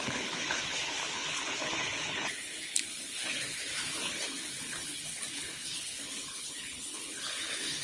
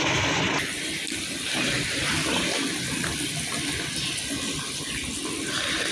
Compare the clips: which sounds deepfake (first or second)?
first